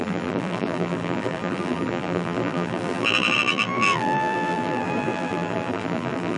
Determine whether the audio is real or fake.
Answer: fake